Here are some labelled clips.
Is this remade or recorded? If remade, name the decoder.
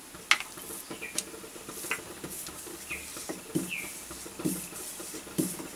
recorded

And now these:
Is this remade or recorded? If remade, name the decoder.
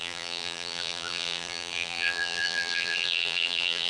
remade, vocoder, BigVGAN v2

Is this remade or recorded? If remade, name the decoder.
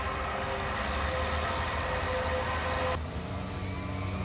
recorded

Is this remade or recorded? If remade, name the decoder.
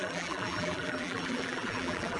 remade, vocoder, BigVGAN v2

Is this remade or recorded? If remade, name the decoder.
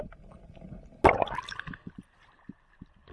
recorded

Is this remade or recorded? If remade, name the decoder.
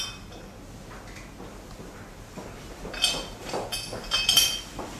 recorded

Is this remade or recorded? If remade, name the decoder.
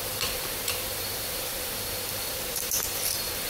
remade, vocoder, BigVGAN v2